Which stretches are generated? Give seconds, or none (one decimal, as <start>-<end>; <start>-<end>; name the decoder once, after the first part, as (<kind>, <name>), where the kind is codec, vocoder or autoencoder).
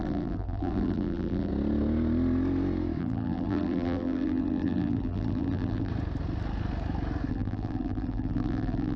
0.0-1.5 (vocoder, BigVGAN v2); 3.0-5.9; 7.3-9.0